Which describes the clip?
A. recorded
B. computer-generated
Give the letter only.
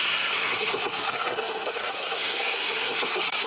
B